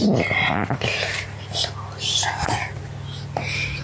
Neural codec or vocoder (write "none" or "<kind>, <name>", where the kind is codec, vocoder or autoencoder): none